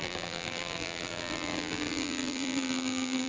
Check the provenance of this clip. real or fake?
fake